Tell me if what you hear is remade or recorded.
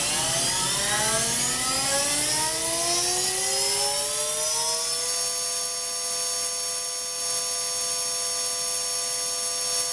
recorded